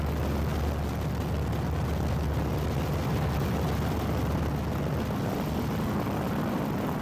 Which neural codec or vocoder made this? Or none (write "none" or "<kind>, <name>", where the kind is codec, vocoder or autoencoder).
none